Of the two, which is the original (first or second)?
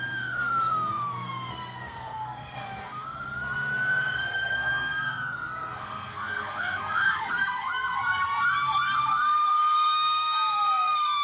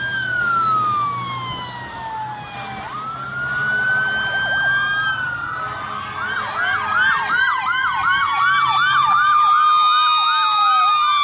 second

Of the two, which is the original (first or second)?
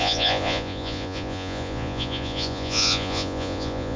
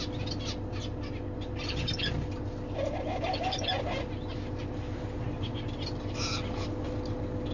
second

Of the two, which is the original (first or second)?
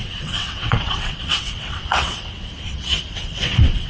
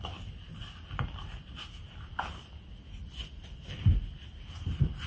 second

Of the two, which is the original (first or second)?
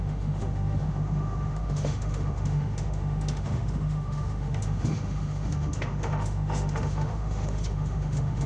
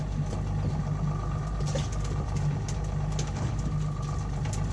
second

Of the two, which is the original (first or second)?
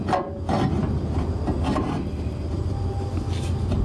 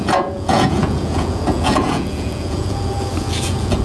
first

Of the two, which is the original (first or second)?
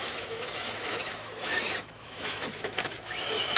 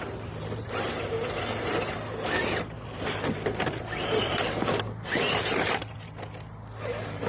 second